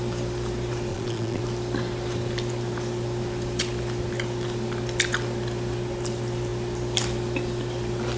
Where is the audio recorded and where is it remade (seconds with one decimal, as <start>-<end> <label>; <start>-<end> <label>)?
0.0-0.9 recorded; 0.9-1.4 remade; 1.4-8.2 recorded